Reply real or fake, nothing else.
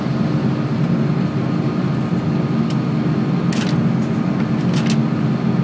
real